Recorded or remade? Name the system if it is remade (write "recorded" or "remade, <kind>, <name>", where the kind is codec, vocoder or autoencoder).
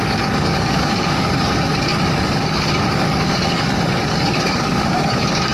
remade, codec, DAC